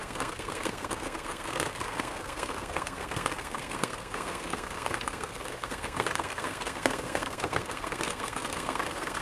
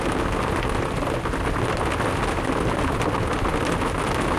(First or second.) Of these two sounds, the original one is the second